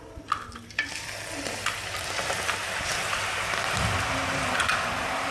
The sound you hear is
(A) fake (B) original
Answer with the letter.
B